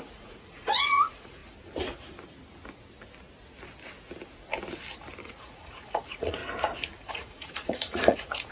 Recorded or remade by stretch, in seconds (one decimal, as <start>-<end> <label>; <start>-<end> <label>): 0.0-1.4 remade; 1.4-5.2 recorded; 5.2-6.4 remade; 6.4-7.1 recorded; 7.1-8.5 remade